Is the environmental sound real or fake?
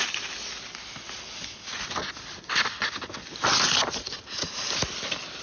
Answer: real